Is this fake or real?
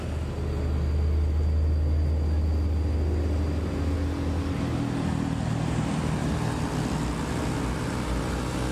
real